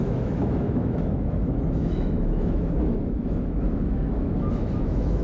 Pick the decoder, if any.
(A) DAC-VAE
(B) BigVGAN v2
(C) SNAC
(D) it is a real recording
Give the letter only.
A